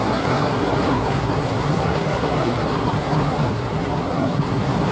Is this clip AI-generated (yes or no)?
yes